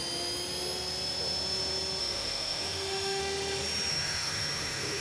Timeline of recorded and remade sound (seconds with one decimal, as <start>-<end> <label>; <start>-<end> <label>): 0.0-2.0 recorded; 2.0-3.2 remade; 3.2-3.9 recorded; 3.9-5.0 remade